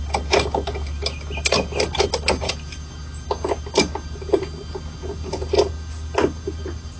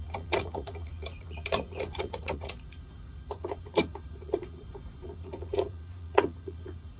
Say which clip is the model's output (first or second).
second